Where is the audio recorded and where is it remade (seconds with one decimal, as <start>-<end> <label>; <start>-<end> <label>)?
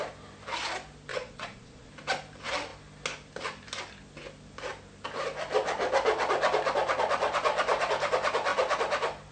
0.0-1.1 recorded; 1.1-1.9 remade; 1.9-9.3 recorded